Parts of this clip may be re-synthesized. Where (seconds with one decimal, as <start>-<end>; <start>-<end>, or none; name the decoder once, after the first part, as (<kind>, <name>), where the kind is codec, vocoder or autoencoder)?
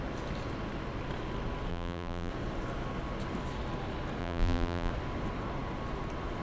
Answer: 1.7-2.3 (vocoder, BigVGAN v2); 4.2-4.9